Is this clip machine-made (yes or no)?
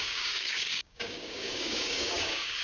yes